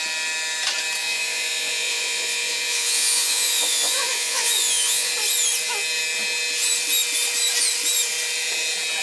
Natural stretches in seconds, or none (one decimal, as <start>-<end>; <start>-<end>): 0.0-1.0; 5.1-9.0